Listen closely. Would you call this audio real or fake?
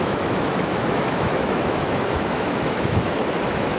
fake